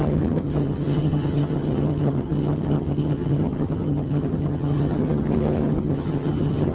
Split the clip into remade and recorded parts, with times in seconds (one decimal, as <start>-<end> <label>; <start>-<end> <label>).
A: 0.0-6.7 remade